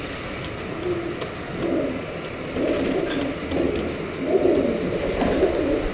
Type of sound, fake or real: real